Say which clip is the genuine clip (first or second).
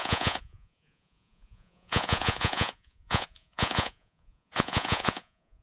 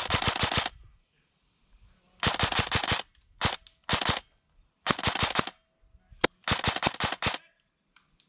second